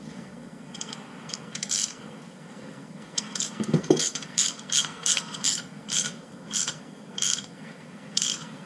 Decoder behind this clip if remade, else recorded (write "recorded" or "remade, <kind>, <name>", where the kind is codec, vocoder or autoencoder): remade, codec, SNAC